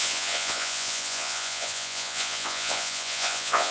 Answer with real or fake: fake